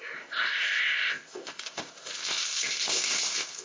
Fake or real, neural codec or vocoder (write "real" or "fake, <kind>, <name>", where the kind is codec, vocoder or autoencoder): fake, codec, ZipCodec